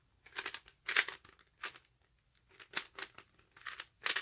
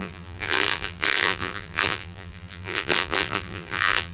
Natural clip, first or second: first